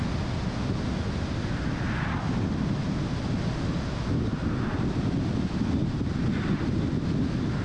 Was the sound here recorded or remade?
recorded